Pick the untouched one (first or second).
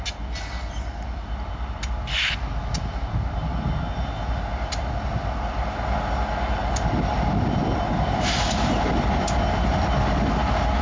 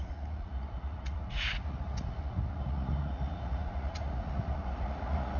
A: first